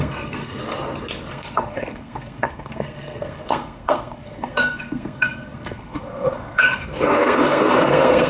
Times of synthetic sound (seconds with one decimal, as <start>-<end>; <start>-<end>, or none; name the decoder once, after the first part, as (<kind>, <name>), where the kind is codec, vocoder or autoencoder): 0.0-0.6 (codec, SNAC); 1.3-8.3